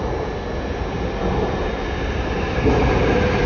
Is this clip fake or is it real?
real